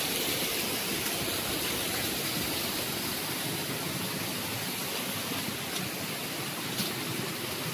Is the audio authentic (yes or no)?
yes